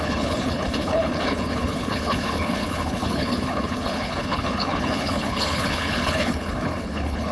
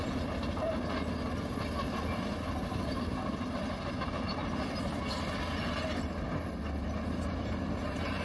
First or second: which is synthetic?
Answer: first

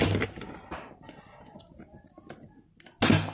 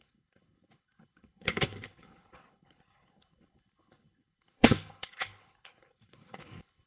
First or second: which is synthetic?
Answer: second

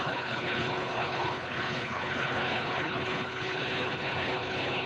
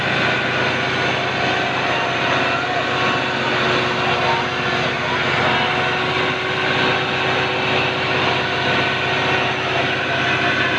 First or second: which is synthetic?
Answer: first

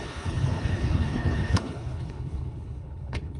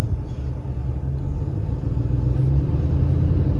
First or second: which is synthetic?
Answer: first